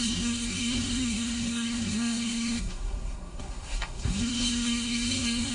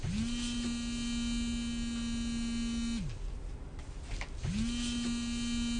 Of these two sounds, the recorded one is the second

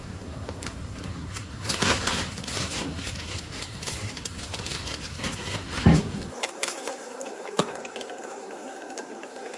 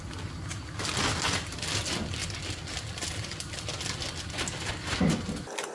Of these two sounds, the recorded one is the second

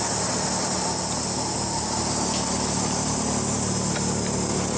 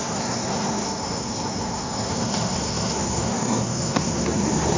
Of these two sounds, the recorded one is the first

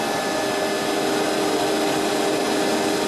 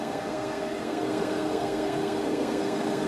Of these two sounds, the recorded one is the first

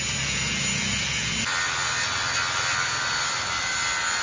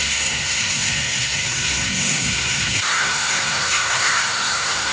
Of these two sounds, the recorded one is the first